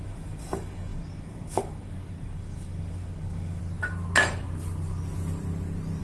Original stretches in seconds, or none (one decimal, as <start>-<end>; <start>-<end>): 3.6-6.0